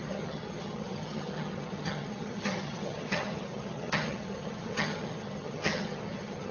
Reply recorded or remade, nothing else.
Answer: remade